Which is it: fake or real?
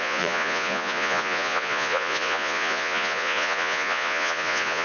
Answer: fake